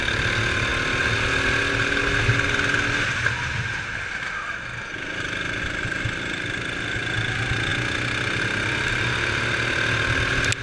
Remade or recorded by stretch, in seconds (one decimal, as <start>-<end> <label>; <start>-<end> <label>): 0.0-10.6 recorded